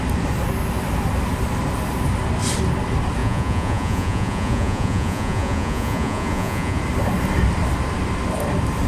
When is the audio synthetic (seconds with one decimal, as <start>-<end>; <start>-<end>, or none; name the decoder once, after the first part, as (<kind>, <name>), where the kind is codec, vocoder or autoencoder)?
3.2-6.8 (vocoder, Vocos)

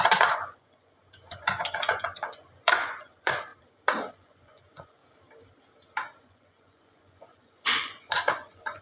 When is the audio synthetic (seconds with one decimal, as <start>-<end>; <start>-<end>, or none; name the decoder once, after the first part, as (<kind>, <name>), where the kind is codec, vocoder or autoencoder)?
0.0-3.5 (vocoder, Vocos); 4.1-5.0; 6.2-8.8

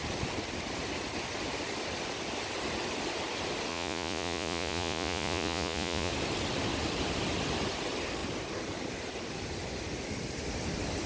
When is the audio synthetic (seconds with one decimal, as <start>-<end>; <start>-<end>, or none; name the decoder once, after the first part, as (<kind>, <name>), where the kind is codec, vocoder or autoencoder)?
3.7-6.1 (vocoder, Vocos)

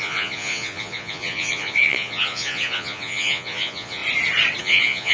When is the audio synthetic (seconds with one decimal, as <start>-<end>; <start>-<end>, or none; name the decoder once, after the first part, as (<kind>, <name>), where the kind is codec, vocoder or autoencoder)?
0.0-4.0 (vocoder, Vocos); 4.6-5.1

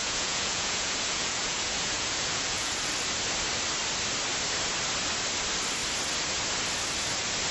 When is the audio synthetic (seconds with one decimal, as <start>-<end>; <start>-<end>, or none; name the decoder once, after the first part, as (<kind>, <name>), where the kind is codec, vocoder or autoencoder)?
0.0-2.9 (vocoder, Vocos)

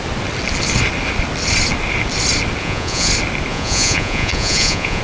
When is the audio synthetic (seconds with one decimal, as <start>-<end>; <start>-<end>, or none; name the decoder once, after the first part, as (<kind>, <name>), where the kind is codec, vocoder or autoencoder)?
2.6-3.1 (vocoder, Vocos); 3.5-5.0

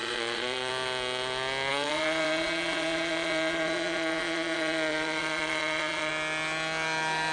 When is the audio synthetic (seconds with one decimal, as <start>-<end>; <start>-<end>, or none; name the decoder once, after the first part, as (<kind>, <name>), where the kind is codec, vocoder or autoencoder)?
0.0-0.7 (vocoder, Vocos); 1.7-6.1

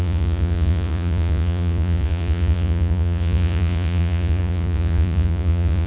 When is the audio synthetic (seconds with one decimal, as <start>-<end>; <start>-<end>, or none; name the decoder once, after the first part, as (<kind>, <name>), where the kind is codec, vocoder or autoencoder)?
0.0-5.9 (vocoder, Vocos)